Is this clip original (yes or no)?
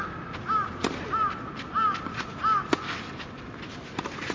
yes